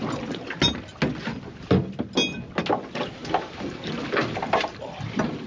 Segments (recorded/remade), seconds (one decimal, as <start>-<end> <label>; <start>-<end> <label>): 0.0-3.2 recorded; 3.2-5.5 remade